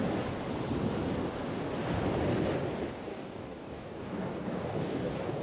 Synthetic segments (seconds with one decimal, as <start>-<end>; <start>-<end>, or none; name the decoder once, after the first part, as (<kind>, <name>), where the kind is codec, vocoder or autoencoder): 3.1-5.4 (codec, DAC)